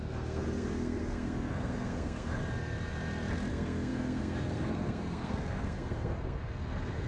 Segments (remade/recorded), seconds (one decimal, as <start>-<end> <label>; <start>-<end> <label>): 0.0-2.4 remade; 2.4-3.5 recorded; 3.5-7.1 remade